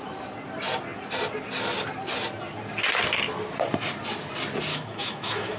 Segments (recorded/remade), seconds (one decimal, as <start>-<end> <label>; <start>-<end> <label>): 0.0-4.7 recorded; 4.7-5.6 remade